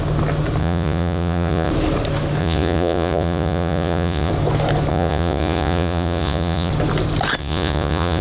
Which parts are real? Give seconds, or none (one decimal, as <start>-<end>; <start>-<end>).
0.0-0.6; 1.7-2.4; 4.3-4.9; 6.7-7.4